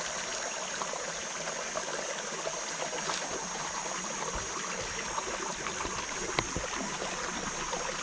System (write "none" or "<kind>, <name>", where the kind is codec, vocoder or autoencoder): none